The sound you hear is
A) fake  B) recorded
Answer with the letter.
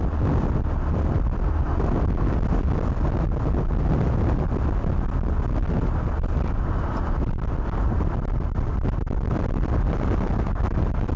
B